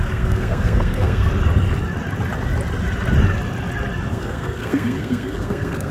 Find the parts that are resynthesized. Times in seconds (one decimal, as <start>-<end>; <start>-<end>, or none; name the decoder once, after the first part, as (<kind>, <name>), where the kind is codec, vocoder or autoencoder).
0.0-1.3 (codec, SNAC); 4.1-5.9